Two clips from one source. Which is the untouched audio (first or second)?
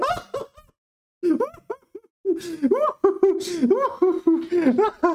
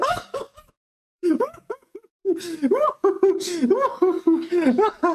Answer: first